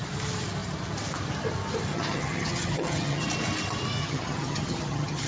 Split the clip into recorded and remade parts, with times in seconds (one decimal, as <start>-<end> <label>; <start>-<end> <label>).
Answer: 0.0-1.9 recorded; 1.9-3.3 remade; 3.3-4.0 recorded; 4.0-5.3 remade